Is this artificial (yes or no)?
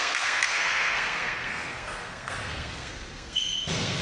yes